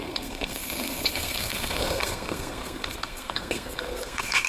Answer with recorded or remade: remade